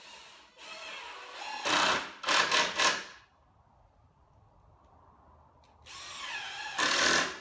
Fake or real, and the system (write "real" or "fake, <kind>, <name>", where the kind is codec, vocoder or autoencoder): real